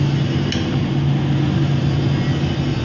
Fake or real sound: real